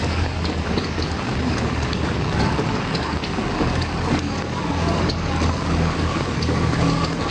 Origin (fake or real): fake